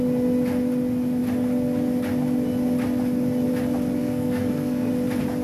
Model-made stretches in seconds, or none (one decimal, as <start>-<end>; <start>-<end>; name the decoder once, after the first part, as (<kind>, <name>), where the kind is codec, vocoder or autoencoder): 4.0-4.9 (codec, SNAC)